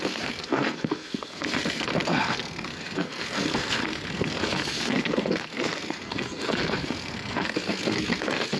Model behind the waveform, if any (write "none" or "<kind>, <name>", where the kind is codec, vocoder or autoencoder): codec, SNAC